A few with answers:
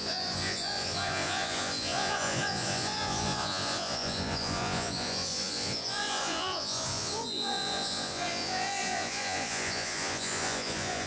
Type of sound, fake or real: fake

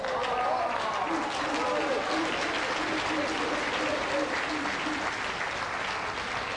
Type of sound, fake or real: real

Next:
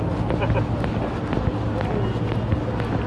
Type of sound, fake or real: real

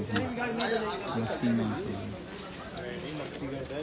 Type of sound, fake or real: real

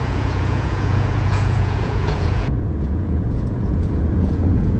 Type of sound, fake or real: fake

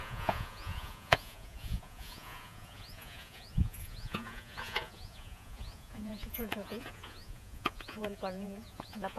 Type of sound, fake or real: fake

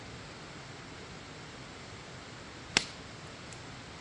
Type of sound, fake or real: real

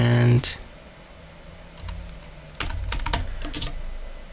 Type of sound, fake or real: real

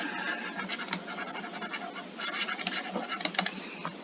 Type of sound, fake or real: real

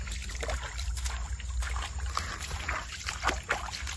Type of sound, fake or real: real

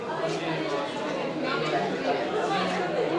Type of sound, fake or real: real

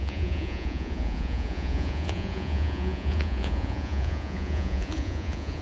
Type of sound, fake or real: fake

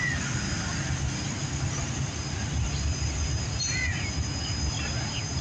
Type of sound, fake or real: real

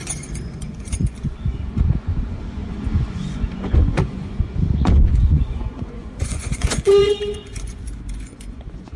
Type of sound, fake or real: fake